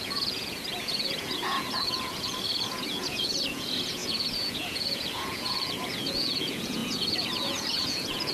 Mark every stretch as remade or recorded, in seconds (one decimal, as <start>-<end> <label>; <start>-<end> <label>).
0.0-8.3 remade